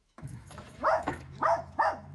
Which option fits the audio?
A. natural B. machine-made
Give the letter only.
B